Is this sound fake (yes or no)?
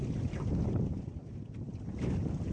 yes